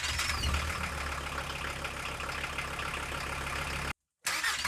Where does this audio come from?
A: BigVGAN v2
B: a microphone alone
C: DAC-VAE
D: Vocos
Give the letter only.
B